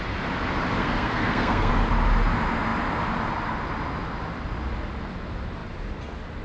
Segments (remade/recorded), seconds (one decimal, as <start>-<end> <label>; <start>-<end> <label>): 0.0-0.8 recorded; 0.8-1.7 remade; 1.7-6.4 recorded